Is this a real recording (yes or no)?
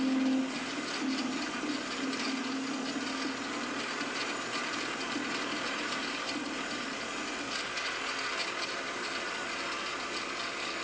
yes